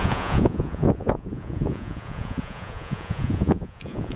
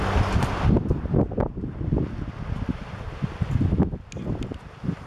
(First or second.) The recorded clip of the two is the second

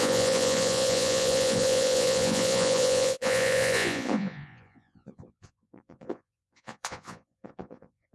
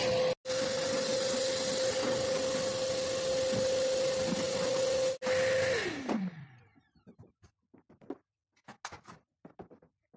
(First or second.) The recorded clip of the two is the second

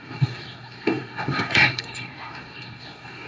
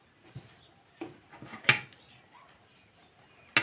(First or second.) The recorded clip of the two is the second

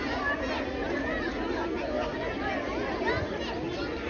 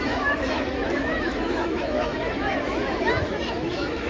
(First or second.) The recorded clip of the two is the first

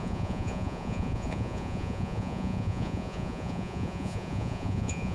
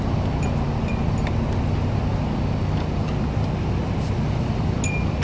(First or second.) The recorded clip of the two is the second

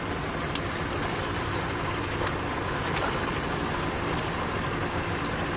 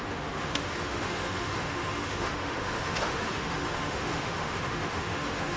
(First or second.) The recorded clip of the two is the first